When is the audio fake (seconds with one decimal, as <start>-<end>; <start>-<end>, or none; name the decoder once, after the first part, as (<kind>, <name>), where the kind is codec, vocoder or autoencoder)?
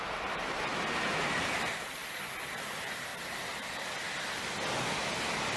0.0-2.0 (vocoder, BigVGAN v2); 2.5-3.1